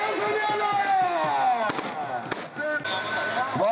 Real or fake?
real